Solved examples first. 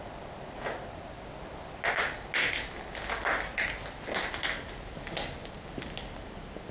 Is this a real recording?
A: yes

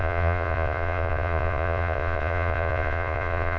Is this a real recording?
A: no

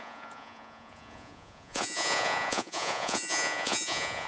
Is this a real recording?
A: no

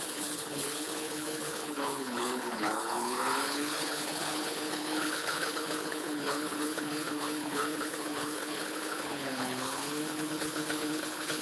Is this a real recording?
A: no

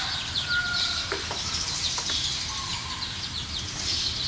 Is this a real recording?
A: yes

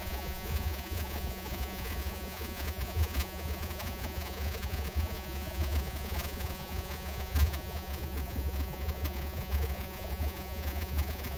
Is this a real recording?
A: no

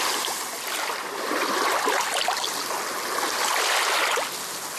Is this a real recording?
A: yes